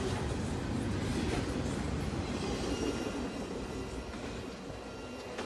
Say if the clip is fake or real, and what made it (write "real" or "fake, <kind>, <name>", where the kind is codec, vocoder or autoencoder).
real